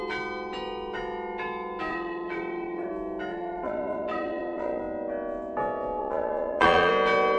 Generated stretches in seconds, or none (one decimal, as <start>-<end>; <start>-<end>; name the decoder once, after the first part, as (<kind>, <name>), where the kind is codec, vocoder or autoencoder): 1.9-2.9 (vocoder, Vocos); 3.3-4.8; 6.0-6.9

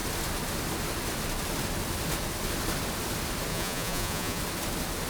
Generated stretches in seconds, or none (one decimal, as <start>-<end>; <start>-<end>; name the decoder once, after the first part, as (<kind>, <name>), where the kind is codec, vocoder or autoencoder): 3.5-4.4 (vocoder, Vocos)

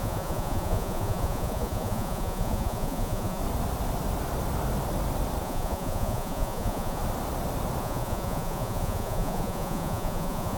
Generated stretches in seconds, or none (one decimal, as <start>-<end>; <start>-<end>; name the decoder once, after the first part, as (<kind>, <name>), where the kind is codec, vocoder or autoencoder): 0.0-3.4 (vocoder, Vocos); 5.4-7.0; 7.8-10.6

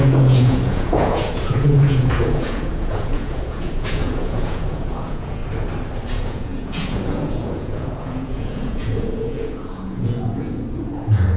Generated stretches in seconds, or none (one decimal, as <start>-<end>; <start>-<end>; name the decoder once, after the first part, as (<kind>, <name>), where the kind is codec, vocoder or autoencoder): 0.0-5.4 (vocoder, Vocos); 6.1-11.4

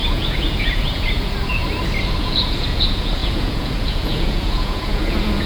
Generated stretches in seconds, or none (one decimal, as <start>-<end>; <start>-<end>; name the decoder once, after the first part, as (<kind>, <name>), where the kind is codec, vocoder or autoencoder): 0.0-1.6 (vocoder, Vocos); 2.2-5.5

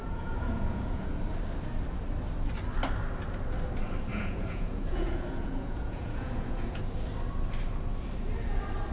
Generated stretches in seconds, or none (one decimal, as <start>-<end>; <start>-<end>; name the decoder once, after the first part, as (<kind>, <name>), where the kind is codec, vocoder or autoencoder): 0.0-1.1 (vocoder, Vocos); 4.1-6.8

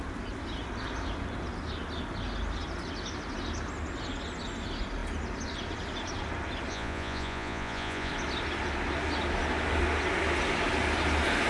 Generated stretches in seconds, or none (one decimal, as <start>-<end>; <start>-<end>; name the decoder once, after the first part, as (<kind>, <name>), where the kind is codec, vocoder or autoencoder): 6.7-8.1 (vocoder, Vocos)

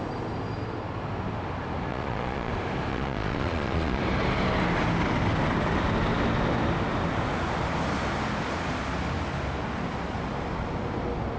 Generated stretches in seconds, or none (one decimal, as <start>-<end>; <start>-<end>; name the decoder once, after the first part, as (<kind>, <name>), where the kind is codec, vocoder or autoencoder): 1.9-2.5 (vocoder, Vocos); 2.9-4.0